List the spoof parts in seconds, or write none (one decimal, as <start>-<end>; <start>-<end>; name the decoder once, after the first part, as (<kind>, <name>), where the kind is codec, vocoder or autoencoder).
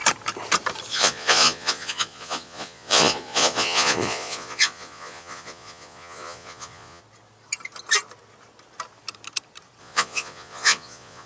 0.9-7.0 (vocoder, Vocos); 9.8-11.3